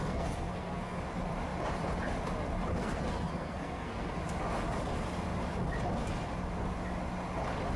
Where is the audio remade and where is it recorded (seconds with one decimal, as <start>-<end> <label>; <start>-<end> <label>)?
0.0-1.0 remade; 1.0-2.8 recorded; 2.8-4.2 remade; 4.2-7.8 recorded